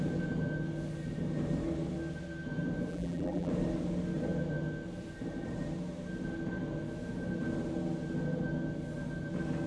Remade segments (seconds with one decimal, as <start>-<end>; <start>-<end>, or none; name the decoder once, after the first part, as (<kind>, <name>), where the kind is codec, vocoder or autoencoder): 2.9-3.5 (vocoder, BigVGAN v2)